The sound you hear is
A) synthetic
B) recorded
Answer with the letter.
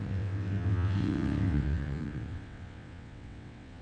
A